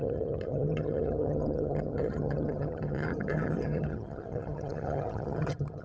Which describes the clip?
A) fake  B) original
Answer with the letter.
A